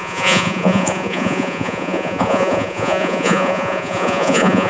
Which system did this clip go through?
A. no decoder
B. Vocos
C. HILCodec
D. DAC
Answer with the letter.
B